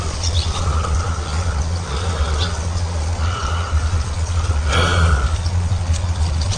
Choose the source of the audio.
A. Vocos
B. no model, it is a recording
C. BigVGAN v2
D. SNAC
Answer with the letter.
A